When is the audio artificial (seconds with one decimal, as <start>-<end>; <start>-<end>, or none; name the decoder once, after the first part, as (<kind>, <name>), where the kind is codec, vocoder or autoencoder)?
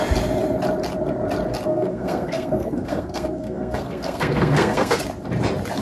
1.7-5.0 (codec, SNAC)